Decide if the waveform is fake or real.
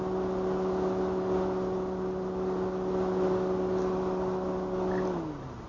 real